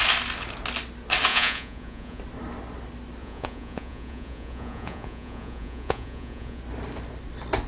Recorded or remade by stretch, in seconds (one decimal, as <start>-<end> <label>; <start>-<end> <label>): 0.0-1.3 recorded; 1.3-2.2 remade; 2.2-3.2 recorded; 3.2-6.6 remade; 6.6-7.7 recorded